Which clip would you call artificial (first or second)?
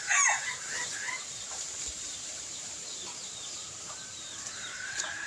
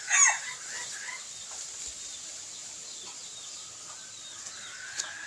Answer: first